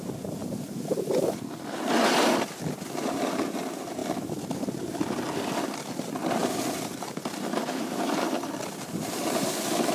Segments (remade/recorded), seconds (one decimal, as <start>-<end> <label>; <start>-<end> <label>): 0.0-6.4 recorded; 6.4-8.5 remade; 8.5-9.9 recorded

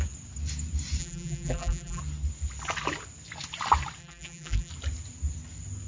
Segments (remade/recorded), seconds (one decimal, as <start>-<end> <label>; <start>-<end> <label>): 0.0-1.0 recorded; 1.0-2.0 remade; 2.0-4.0 recorded; 4.0-4.7 remade; 4.7-5.9 recorded

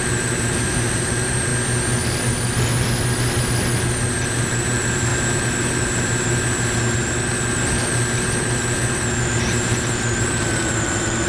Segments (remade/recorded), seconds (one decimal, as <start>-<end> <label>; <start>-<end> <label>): 0.0-1.5 remade; 1.5-4.6 recorded; 4.6-5.1 remade; 5.1-9.2 recorded; 9.2-11.3 remade

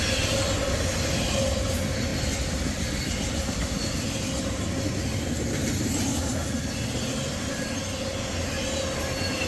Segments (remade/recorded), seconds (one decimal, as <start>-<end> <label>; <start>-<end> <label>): 0.0-9.5 recorded